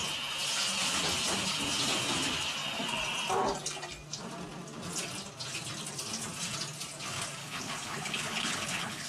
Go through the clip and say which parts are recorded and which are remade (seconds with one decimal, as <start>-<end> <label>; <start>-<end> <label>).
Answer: 0.0-7.4 recorded; 7.4-9.1 remade